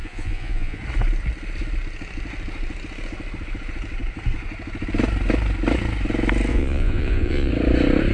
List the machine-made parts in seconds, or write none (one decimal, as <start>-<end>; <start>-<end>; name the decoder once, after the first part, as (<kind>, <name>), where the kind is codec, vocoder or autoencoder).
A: 0.0-0.8 (vocoder, Vocos); 6.5-7.5